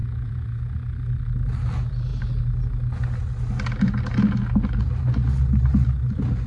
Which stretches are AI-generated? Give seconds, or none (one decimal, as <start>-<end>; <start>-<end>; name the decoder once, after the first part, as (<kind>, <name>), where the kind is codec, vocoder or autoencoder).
0.0-0.6 (vocoder, Vocos)